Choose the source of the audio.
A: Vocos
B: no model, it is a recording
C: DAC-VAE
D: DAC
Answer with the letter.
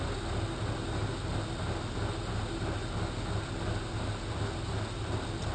B